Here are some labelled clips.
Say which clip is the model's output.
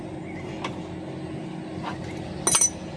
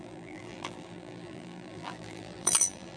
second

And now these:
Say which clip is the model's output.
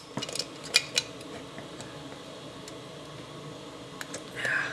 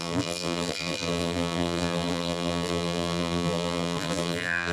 second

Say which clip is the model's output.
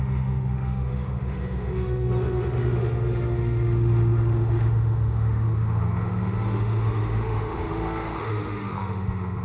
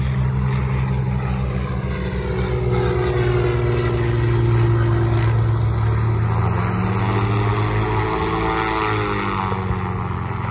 first